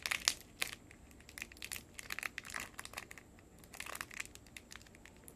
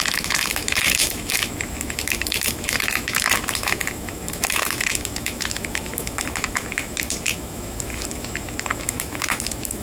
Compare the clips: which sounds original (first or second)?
first